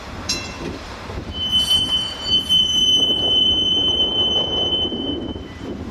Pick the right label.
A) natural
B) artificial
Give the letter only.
B